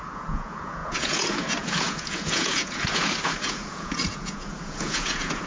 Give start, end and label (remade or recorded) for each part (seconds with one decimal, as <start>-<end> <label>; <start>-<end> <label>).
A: 0.0-5.5 remade